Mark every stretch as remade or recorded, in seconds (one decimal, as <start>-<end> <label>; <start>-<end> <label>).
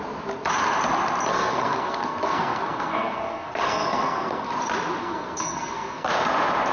0.0-1.3 recorded; 1.3-4.5 remade; 4.5-5.0 recorded; 5.0-6.1 remade; 6.1-6.7 recorded